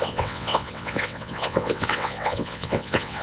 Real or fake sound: fake